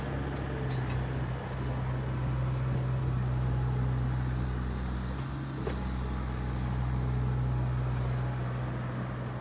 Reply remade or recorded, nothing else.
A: recorded